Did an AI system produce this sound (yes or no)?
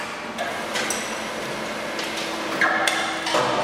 no